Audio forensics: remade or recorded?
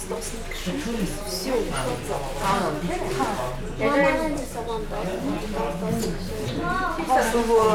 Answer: recorded